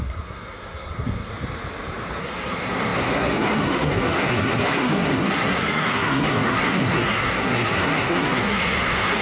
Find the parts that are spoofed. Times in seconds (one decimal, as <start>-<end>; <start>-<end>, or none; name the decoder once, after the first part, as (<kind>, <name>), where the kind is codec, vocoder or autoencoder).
0.0-1.3 (codec, SNAC); 2.2-9.2